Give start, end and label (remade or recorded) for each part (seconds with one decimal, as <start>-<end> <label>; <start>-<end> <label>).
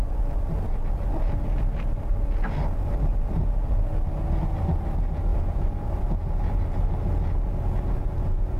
0.0-5.3 recorded; 5.3-6.0 remade; 6.0-8.6 recorded